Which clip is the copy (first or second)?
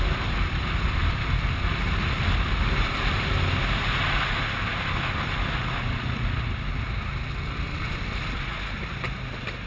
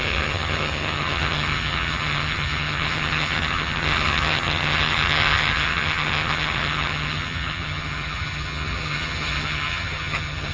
second